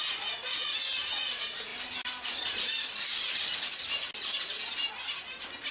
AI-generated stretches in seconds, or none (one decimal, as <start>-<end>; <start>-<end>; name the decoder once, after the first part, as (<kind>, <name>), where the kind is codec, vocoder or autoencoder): none